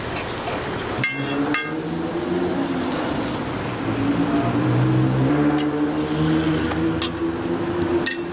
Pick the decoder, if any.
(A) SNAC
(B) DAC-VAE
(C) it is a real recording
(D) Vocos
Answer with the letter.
C